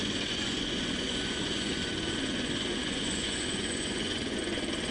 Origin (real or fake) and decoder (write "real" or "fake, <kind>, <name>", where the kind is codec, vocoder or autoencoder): fake, vocoder, Vocos